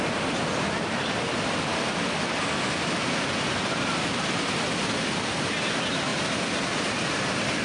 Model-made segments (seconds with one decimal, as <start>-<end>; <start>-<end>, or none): 0.0-7.6